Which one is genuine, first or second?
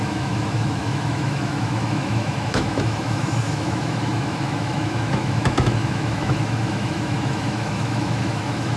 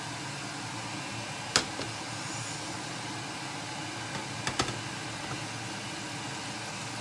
second